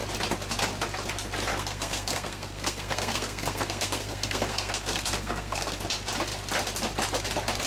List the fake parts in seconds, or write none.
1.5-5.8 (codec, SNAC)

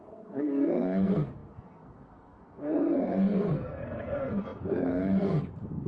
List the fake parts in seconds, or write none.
0.0-5.9 (codec, SNAC)